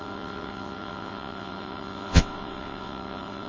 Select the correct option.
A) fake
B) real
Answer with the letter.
A